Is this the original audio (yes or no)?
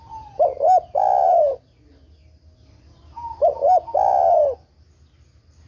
yes